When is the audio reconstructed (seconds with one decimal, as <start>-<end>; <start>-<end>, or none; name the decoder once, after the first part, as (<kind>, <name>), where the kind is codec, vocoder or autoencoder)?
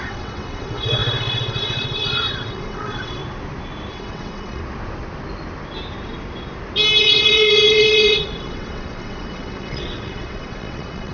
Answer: 0.0-3.2 (vocoder, WaveNeXt); 3.9-4.6; 7.0-11.1